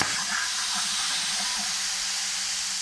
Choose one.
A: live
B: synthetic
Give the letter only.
A